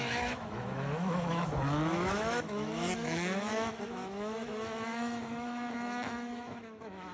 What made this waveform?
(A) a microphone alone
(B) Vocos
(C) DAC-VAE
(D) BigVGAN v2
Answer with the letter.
C